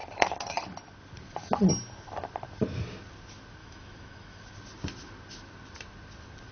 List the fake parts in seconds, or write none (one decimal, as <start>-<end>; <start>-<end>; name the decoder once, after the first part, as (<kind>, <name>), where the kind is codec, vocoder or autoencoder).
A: 3.6-4.4 (autoencoder, DAC-VAE)